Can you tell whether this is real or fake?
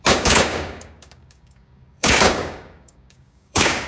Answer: fake